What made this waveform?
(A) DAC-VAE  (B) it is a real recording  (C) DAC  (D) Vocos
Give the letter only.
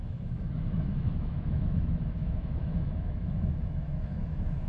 A